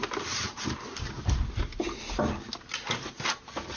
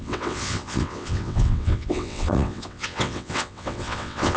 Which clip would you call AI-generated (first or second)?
second